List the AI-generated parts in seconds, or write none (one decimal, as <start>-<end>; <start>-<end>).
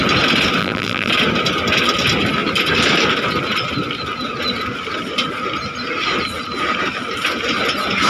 0.6-1.1